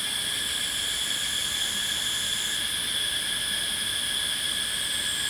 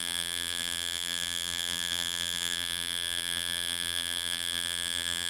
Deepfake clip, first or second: second